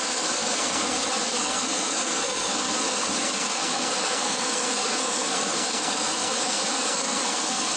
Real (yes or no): no